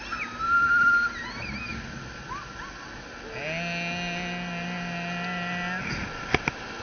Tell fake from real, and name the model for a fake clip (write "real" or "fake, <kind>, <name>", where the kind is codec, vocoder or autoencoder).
real